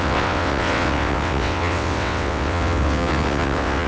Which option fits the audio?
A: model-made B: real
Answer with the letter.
A